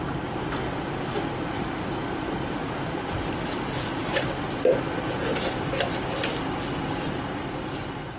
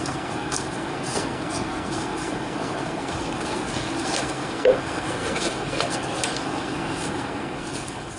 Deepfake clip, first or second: second